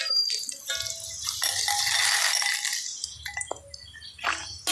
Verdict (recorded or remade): recorded